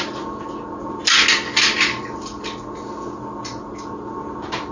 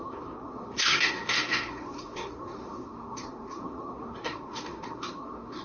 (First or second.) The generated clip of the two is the second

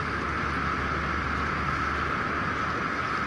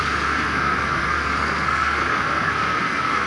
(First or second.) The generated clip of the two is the second